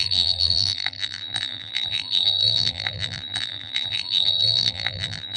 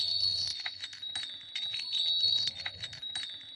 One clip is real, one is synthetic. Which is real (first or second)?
second